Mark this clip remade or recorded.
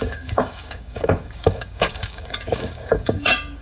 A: remade